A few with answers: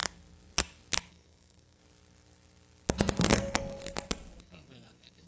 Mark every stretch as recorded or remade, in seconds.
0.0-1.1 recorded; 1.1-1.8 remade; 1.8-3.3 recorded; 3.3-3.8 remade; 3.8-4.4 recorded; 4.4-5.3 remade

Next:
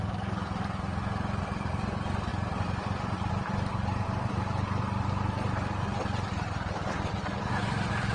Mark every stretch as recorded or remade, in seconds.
0.0-8.1 recorded

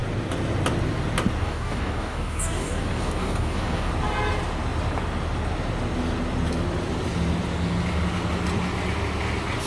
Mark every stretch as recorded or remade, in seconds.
0.0-1.4 recorded; 1.4-3.9 remade; 3.9-9.7 recorded

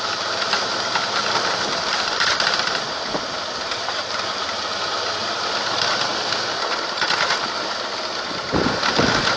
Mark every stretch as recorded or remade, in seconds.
0.0-9.4 recorded